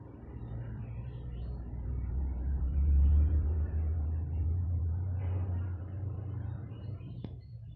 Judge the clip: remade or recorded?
remade